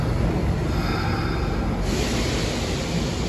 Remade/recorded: recorded